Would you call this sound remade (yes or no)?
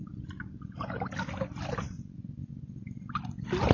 no